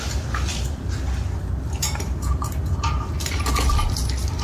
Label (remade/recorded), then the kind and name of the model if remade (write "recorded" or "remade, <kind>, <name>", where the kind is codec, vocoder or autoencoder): recorded